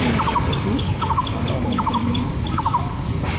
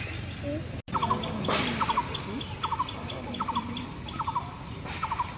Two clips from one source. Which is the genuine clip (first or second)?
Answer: second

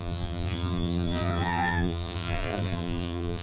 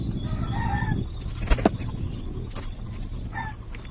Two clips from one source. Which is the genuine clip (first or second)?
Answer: second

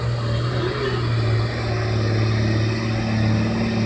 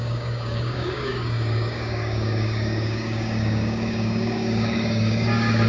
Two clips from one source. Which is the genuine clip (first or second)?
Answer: first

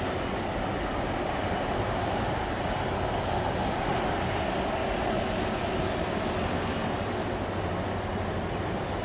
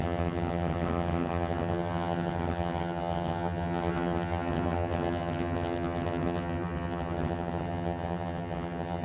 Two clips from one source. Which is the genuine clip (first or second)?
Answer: first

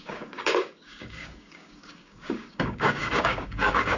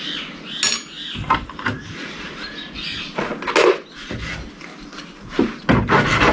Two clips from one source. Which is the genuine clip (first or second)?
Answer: second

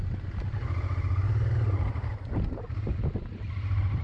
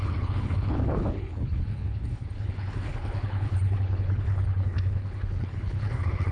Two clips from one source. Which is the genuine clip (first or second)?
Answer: first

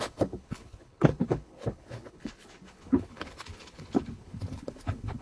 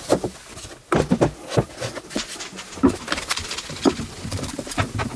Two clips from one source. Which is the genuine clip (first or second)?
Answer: second